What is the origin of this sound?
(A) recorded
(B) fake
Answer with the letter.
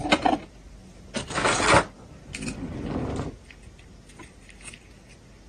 A